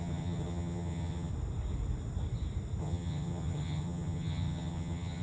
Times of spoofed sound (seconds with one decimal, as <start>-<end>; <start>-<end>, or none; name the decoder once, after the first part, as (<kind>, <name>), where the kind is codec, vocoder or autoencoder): 0.0-1.3 (vocoder, HiFi-GAN); 2.8-5.2